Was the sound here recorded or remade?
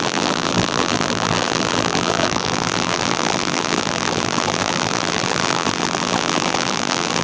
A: remade